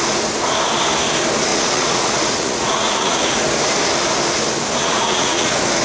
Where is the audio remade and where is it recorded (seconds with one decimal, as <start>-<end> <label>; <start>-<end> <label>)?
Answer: 0.0-1.5 recorded; 1.5-3.3 remade; 3.3-4.8 recorded; 4.8-5.8 remade